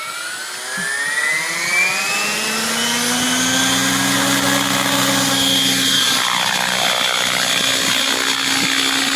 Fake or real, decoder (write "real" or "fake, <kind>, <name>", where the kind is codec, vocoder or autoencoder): real